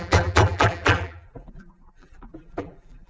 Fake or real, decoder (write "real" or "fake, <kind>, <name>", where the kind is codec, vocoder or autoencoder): fake, vocoder, BigVGAN v2